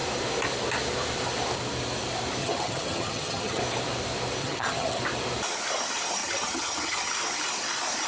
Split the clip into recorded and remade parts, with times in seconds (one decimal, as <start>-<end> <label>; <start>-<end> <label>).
0.0-2.4 recorded; 2.4-3.6 remade; 3.6-4.4 recorded; 4.4-5.0 remade; 5.0-6.2 recorded; 6.2-7.1 remade; 7.1-8.1 recorded